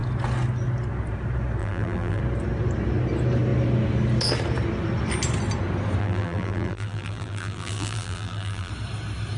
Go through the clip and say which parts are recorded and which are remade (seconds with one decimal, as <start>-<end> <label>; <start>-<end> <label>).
0.0-1.6 recorded; 1.6-2.2 remade; 2.2-6.0 recorded; 6.0-8.7 remade; 8.7-9.4 recorded